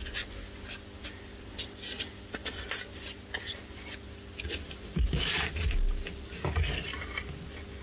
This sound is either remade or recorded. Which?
recorded